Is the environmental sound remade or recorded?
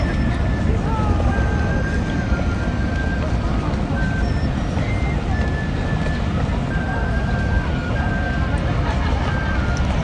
recorded